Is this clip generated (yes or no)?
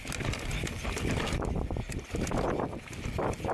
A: no